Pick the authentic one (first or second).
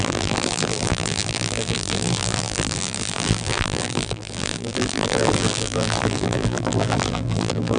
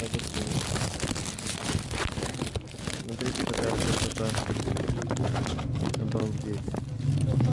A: second